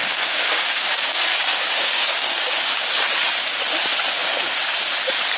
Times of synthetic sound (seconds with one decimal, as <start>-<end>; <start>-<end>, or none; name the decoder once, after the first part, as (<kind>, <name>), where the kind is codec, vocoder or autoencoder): 0.0-3.2 (codec, DAC)